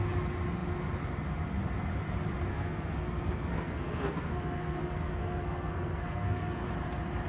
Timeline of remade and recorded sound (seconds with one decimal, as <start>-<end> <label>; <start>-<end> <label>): 0.0-2.5 recorded; 2.5-6.7 remade; 6.7-7.3 recorded